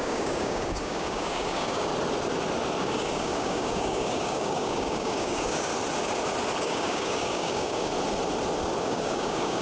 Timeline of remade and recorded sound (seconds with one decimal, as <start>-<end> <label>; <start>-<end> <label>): 0.0-1.9 remade; 1.9-2.8 recorded; 2.8-5.7 remade; 5.7-6.6 recorded; 6.6-7.9 remade; 7.9-8.8 recorded; 8.8-9.6 remade